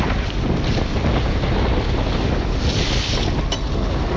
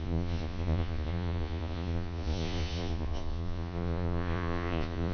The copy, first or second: second